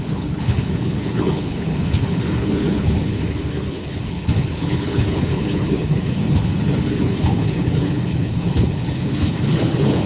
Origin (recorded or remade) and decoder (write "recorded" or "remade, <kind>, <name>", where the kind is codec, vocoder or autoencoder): remade, codec, HILCodec